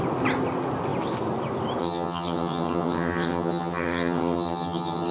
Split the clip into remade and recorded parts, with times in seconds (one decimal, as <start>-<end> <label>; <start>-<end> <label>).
0.0-1.8 recorded; 1.8-5.1 remade